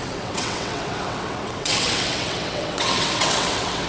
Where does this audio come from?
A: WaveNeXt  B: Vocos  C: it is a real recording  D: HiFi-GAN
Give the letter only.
A